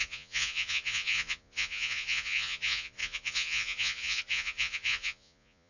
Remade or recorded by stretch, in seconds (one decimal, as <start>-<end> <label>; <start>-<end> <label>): 0.0-5.7 remade